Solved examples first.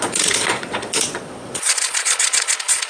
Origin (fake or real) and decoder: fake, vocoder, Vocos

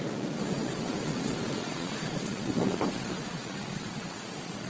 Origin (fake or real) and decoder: fake, vocoder, Vocos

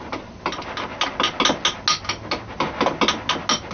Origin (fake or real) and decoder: real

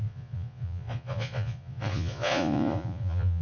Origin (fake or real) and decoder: fake, vocoder, Vocos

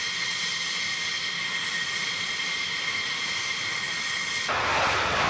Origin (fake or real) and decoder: real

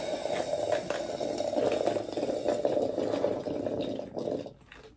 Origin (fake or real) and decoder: real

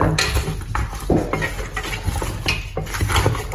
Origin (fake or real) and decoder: real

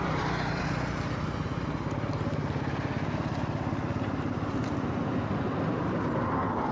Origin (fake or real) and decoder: real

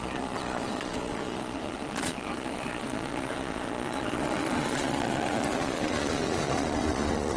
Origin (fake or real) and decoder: fake, vocoder, Vocos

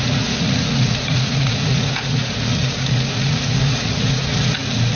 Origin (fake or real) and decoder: fake, vocoder, Vocos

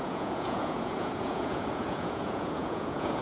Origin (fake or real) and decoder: fake, vocoder, Vocos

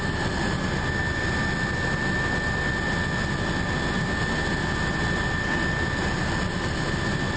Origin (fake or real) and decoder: real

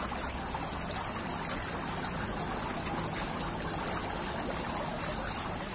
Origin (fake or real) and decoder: real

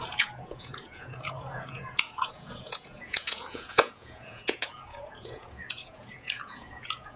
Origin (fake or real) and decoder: fake, vocoder, Vocos